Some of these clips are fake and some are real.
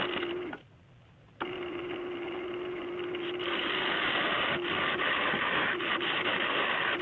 real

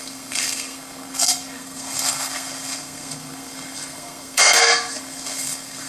fake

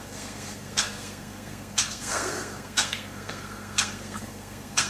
fake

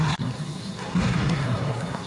fake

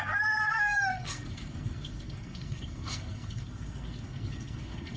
fake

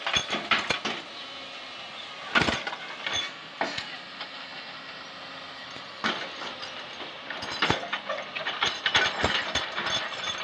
real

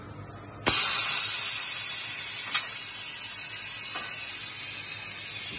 real